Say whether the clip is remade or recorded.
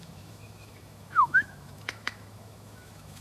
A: remade